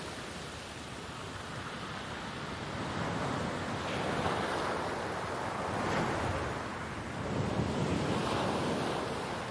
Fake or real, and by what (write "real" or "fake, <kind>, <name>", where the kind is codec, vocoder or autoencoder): real